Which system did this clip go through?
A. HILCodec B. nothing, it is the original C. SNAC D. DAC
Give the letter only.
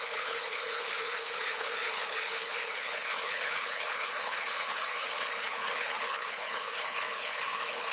A